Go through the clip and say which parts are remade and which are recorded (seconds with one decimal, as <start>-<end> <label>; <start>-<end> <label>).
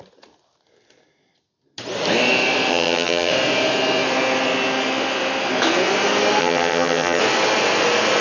0.0-2.7 recorded; 2.7-3.3 remade; 3.3-6.4 recorded; 6.4-7.2 remade; 7.2-8.2 recorded